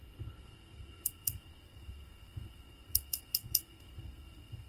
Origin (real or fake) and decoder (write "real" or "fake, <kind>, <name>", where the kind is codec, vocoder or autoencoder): fake, codec, SNAC